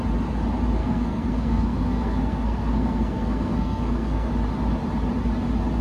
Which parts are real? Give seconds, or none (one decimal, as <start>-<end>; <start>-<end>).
0.0-0.8; 4.3-5.8

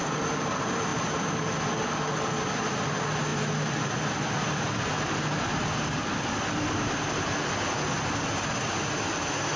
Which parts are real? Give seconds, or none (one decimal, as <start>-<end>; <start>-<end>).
0.0-9.6

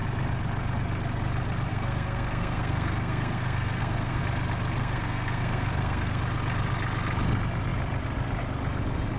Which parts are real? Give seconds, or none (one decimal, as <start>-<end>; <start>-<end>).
0.0-1.7; 4.2-4.8; 6.2-9.2

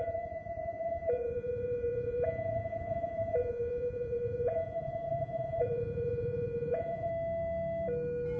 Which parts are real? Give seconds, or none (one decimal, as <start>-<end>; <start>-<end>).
7.1-8.4